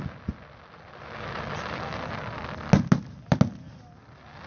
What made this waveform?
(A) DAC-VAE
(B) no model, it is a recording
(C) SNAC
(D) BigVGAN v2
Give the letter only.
B